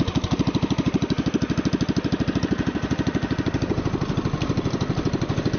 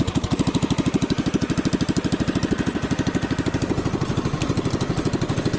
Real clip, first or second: second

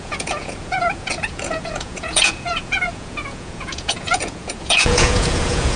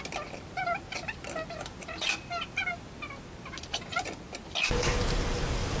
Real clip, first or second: second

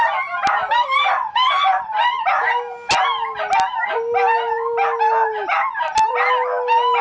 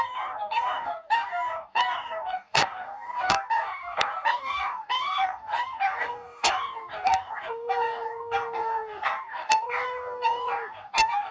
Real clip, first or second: first